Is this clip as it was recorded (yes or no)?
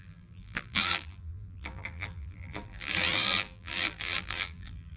no